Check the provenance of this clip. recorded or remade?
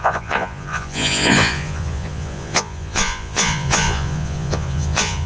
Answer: remade